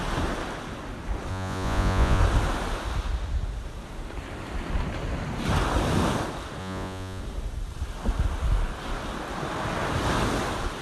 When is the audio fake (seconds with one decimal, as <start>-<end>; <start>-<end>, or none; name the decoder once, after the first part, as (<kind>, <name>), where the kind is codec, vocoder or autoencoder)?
1.3-2.2 (vocoder, Vocos); 6.6-7.2